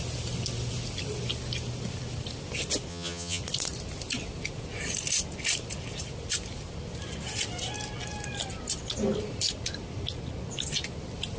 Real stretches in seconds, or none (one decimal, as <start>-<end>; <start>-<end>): 0.0-2.9; 3.4-11.4